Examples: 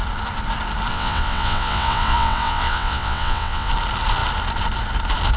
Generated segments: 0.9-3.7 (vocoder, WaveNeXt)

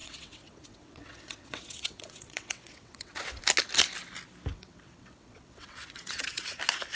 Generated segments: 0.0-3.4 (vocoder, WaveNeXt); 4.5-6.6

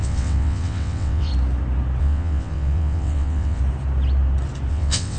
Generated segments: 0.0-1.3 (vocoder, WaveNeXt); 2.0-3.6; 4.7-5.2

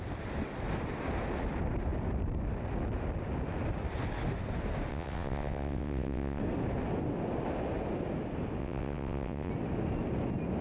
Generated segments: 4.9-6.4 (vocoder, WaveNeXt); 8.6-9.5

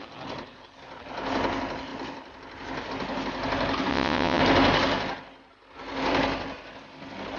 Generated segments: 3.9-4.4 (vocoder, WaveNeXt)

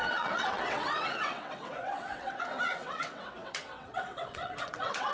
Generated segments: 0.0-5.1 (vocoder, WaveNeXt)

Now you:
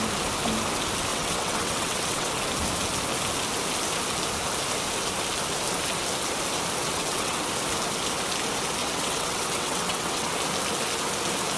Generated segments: 1.1-2.3 (vocoder, WaveNeXt); 6.8-7.4; 8.8-10.3